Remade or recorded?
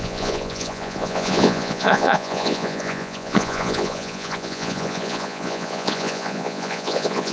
remade